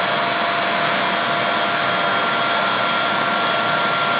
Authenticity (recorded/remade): recorded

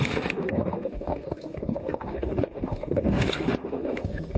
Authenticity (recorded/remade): remade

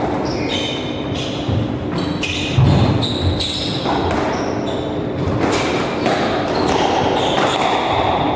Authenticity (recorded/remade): recorded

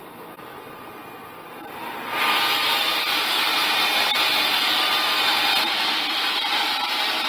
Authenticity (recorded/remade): recorded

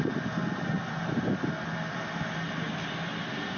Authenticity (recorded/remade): recorded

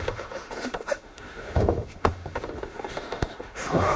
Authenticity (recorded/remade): remade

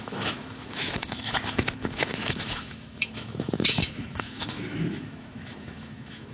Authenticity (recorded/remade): remade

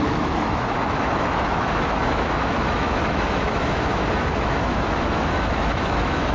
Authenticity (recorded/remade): remade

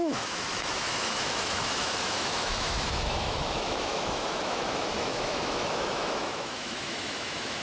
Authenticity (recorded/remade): remade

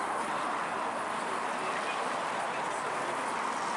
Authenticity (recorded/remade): recorded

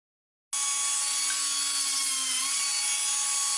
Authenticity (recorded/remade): recorded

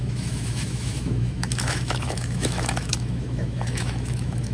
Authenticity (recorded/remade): remade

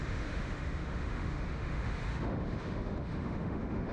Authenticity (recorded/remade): remade